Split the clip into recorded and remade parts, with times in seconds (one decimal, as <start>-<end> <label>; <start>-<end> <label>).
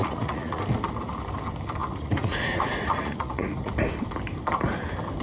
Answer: 0.0-0.6 remade; 0.6-1.8 recorded; 1.8-3.7 remade; 3.7-5.2 recorded